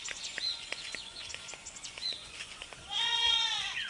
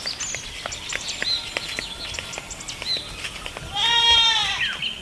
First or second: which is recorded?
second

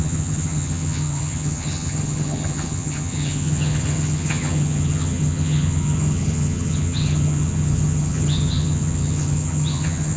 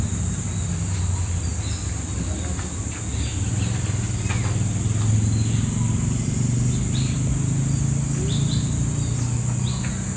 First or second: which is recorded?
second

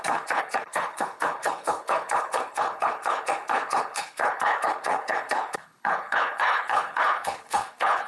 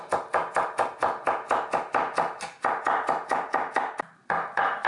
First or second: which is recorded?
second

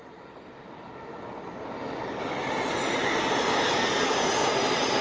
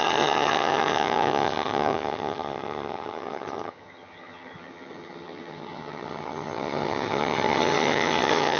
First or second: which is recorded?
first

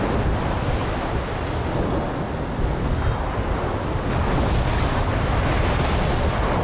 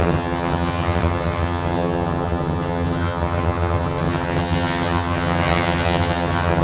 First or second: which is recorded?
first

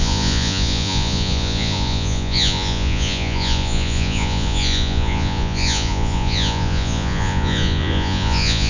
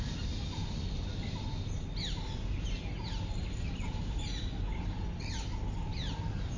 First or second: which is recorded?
second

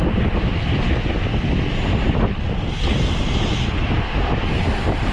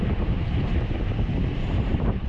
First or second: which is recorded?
first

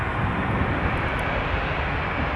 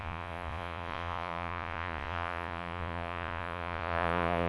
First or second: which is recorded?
first